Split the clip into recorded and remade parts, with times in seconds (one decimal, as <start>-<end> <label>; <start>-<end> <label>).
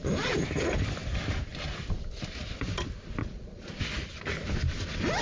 0.0-3.2 recorded; 3.2-3.8 remade; 3.8-5.2 recorded